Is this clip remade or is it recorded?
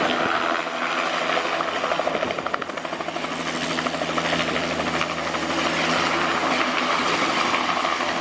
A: recorded